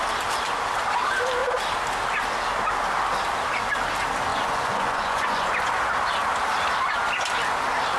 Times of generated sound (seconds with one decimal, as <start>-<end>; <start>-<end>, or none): 4.3-5.5